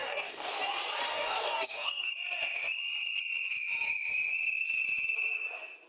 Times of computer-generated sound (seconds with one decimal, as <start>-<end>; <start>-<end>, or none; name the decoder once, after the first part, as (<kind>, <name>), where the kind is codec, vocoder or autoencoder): 0.0-0.5 (codec, DAC); 1.1-2.1